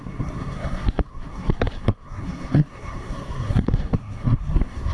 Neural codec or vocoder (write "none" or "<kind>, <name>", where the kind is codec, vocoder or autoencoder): codec, SNAC